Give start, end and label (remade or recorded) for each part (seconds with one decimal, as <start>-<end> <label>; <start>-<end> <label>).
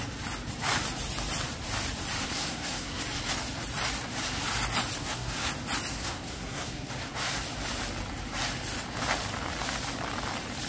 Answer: 0.0-2.2 recorded; 2.2-3.0 remade; 3.0-5.0 recorded; 5.0-5.5 remade; 5.5-5.9 recorded; 5.9-6.9 remade; 6.9-10.7 recorded